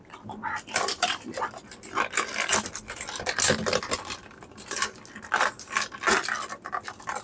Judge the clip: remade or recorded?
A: recorded